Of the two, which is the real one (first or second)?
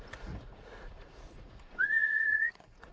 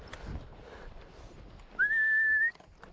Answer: second